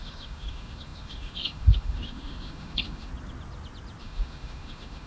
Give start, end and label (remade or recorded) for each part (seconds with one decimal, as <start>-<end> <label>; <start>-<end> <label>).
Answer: 0.0-3.1 remade; 3.1-4.0 recorded; 4.0-5.1 remade